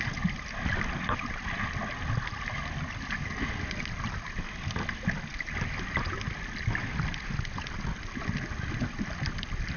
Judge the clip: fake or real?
real